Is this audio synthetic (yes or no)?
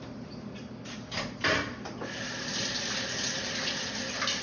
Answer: no